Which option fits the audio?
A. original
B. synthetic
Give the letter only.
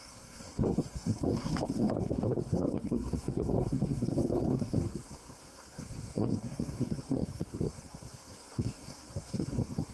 B